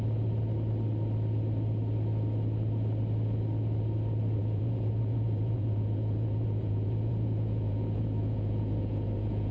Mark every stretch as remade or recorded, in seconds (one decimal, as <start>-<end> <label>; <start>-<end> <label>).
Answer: 0.0-4.4 recorded; 4.4-9.5 remade